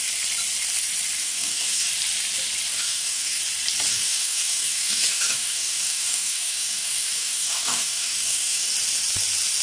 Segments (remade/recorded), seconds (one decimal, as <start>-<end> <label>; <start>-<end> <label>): 0.0-1.2 recorded; 1.2-1.9 remade; 1.9-2.7 recorded; 2.7-3.4 remade; 3.4-3.9 recorded; 3.9-8.7 remade; 8.7-9.6 recorded